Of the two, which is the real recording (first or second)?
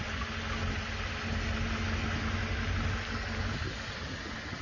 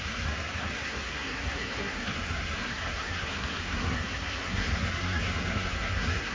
first